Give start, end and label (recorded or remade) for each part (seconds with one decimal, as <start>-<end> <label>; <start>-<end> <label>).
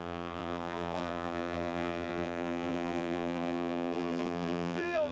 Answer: 0.0-5.1 remade